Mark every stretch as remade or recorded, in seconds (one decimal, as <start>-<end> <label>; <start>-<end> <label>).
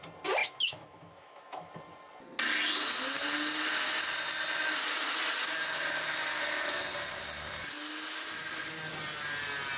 0.0-0.4 recorded; 0.4-1.7 remade; 1.7-9.8 recorded